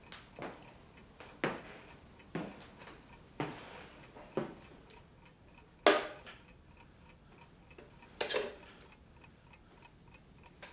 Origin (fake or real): real